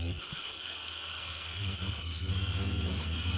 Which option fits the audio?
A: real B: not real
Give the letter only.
B